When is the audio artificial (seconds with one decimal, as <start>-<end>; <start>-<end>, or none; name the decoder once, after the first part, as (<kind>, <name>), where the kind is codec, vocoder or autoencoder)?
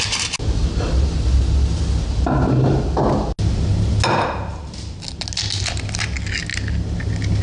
4.5-5.2 (vocoder, BigVGAN v2)